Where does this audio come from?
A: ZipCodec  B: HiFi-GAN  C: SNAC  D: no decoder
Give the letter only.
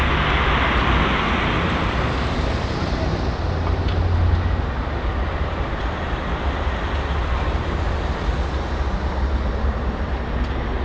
D